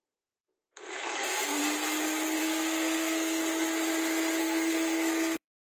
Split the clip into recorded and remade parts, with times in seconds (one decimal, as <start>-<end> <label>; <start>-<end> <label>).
0.0-1.6 remade; 1.6-2.4 recorded; 2.4-3.4 remade; 3.4-4.4 recorded; 4.4-5.6 remade